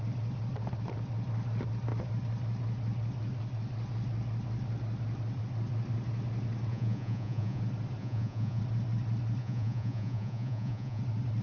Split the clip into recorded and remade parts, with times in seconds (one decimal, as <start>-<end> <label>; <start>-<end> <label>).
0.0-6.7 recorded; 6.7-7.6 remade; 7.6-8.0 recorded; 8.0-8.6 remade; 8.6-9.4 recorded; 9.4-11.0 remade; 11.0-11.4 recorded